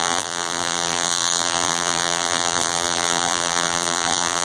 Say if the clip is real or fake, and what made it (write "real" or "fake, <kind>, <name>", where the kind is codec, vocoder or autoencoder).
fake, vocoder, BigVGAN v2